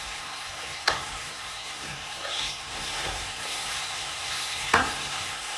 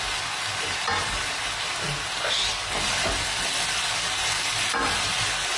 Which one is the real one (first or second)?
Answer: second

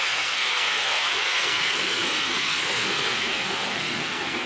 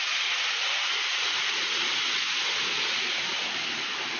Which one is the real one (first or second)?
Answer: second